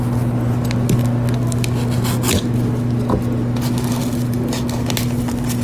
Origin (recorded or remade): recorded